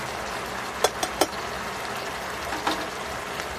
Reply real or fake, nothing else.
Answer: real